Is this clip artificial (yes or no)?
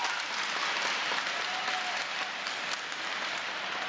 no